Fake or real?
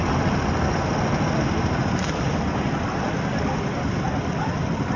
real